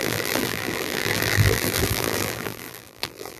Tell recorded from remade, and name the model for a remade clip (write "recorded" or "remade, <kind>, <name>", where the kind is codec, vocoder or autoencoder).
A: remade, vocoder, BigVGAN v2